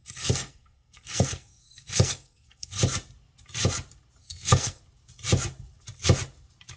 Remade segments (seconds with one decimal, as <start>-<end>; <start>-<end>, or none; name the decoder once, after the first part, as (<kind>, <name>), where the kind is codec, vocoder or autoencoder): 0.0-2.8 (codec, SNAC); 4.2-4.8